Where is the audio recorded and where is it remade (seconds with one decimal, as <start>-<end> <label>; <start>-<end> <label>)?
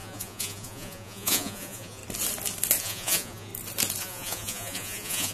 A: 0.0-2.0 remade; 2.0-2.8 recorded; 2.8-3.5 remade; 3.5-4.0 recorded; 4.0-5.3 remade